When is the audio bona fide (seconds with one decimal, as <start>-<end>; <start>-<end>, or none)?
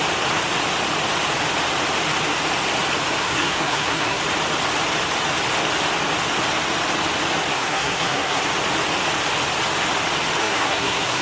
0.0-3.2; 4.2-7.5; 8.4-10.4